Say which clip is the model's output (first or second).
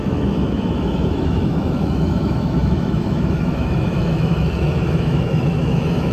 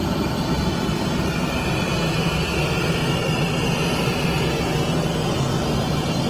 first